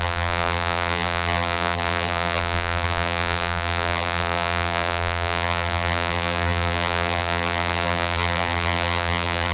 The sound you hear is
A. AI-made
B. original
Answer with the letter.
A